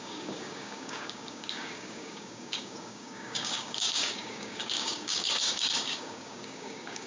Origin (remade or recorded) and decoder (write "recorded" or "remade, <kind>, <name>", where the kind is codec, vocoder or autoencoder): remade, codec, DAC